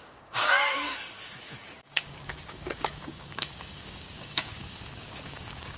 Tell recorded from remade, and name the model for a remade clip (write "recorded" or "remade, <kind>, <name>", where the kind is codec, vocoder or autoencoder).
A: remade, codec, DAC